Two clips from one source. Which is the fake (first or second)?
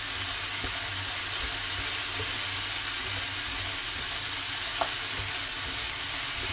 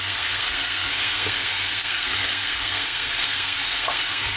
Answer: second